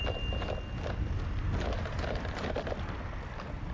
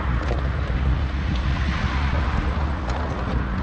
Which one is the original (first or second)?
first